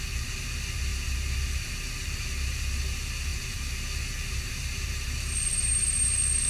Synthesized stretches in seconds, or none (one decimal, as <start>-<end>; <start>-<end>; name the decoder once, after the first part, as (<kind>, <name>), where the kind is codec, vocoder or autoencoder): 0.0-6.5 (vocoder, BigVGAN v2)